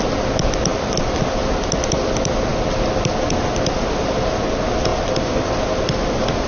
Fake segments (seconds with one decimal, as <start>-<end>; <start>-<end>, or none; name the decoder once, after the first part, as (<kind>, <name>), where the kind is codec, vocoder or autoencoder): none